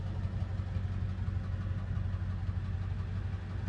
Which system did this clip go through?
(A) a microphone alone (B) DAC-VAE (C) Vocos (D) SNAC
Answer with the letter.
A